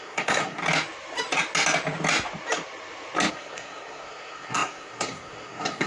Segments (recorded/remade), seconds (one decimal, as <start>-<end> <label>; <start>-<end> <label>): 0.0-0.6 remade; 0.6-3.3 recorded; 3.3-5.9 remade